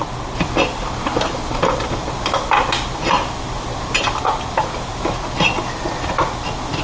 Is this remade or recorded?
recorded